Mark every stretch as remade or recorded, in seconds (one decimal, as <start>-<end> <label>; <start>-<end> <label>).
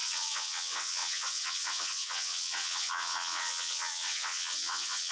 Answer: 0.0-5.1 remade